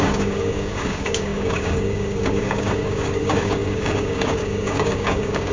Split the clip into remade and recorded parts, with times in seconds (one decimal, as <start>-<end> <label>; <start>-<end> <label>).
0.0-5.5 remade